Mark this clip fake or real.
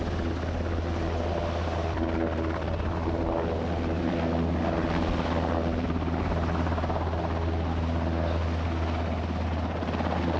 real